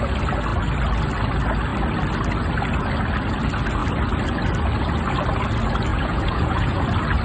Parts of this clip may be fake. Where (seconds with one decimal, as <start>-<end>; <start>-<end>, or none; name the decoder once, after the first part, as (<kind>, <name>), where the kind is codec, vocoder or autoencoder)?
5.9-6.8 (vocoder, Vocos)